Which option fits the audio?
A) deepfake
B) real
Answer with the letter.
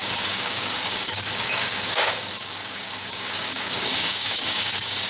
A